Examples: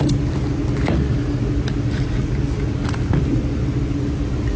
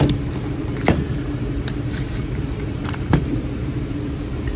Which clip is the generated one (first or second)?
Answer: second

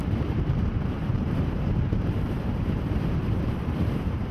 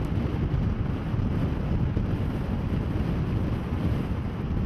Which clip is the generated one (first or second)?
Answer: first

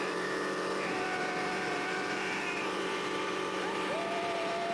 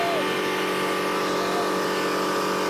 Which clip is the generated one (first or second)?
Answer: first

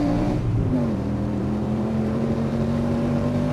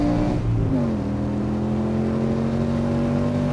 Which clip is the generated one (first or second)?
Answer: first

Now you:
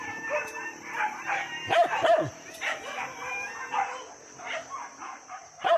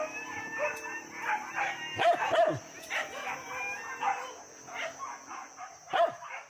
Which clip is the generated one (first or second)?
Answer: first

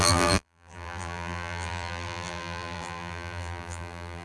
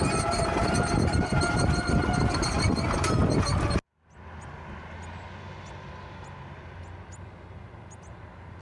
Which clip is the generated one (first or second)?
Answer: first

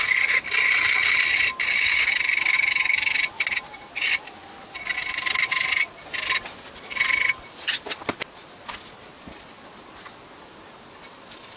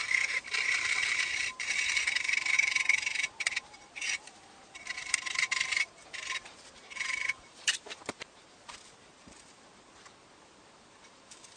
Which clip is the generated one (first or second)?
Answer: second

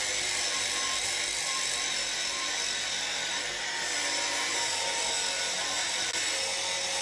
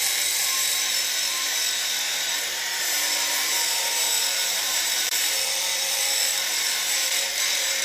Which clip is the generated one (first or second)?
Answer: second